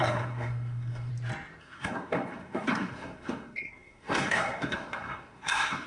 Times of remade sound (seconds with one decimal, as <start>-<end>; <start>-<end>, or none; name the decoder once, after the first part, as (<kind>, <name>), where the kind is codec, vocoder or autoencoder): 0.0-1.1 (codec, SNAC); 1.6-5.9